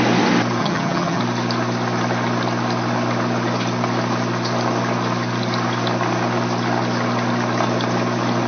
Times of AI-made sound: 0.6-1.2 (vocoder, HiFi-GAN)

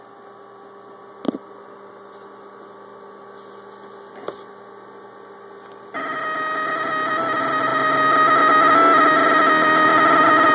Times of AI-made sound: none

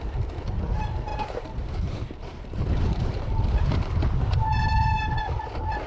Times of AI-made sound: 1.1-3.8 (vocoder, BigVGAN v2)

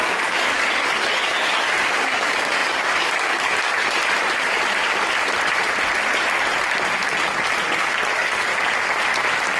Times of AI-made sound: 0.0-3.8 (codec, DAC); 8.1-8.5

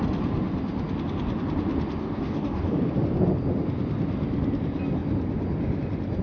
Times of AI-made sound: 2.0-2.9 (codec, DAC)

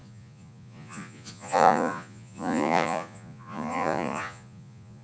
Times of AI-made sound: 0.0-5.0 (vocoder, Vocos)